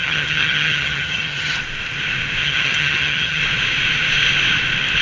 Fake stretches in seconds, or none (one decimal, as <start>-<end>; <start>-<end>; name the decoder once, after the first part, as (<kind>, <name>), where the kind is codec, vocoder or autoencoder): 0.0-1.6 (vocoder, HiFi-GAN); 2.4-3.4

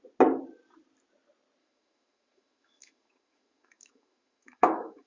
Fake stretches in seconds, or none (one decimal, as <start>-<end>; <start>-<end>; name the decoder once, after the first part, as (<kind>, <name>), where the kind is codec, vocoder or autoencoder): 1.6-5.1 (autoencoder, DAC-VAE)